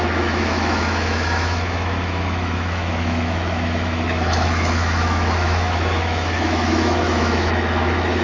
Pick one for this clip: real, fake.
fake